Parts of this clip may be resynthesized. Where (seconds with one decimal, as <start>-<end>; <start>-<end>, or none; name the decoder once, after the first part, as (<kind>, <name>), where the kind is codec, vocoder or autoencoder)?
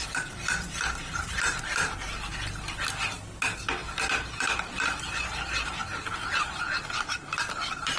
0.0-1.6 (vocoder, BigVGAN v2)